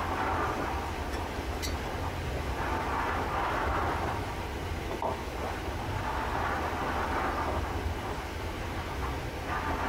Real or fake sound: real